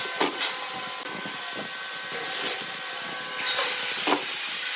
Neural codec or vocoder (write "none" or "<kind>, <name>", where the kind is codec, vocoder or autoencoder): none